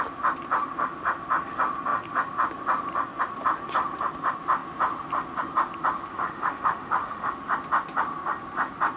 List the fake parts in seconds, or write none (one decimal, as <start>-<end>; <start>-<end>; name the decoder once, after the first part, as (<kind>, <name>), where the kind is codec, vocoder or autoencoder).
6.1-7.3 (autoencoder, DAC-VAE)